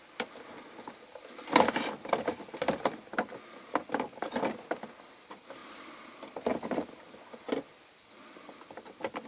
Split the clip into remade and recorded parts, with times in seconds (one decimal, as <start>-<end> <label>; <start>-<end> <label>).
0.0-9.3 recorded